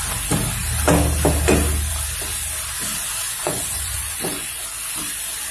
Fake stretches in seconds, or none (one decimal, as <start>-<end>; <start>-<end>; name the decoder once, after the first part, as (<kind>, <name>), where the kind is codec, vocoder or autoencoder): 3.4-4.6 (vocoder, Vocos)